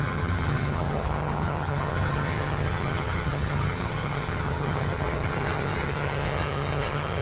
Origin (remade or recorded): remade